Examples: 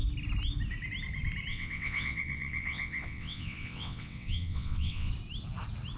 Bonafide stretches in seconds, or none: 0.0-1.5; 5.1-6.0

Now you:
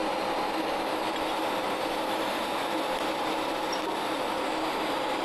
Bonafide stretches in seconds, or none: 0.0-5.2

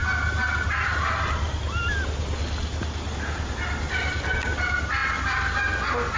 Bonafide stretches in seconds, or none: 0.0-6.2

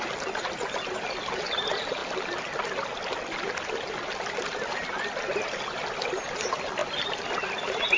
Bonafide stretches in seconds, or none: 0.0-8.0

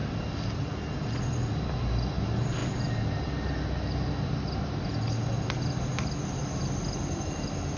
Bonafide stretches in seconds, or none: 0.0-7.8

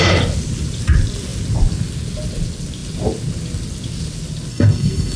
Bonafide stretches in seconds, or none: 0.0-4.5

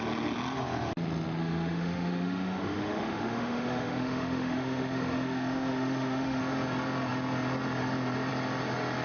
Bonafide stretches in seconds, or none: 0.0-1.4; 6.4-9.0

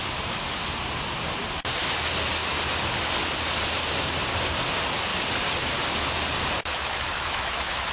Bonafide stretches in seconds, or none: 0.0-6.7